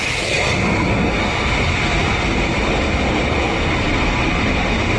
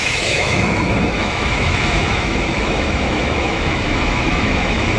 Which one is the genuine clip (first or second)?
first